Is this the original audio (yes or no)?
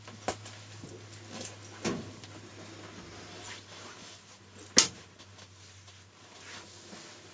yes